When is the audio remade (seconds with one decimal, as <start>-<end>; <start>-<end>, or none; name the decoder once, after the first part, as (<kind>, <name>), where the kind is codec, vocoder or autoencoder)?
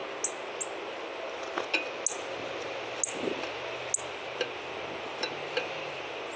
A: none